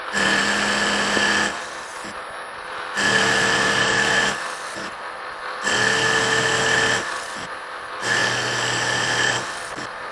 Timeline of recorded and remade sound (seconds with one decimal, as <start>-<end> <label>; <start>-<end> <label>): 0.0-10.1 recorded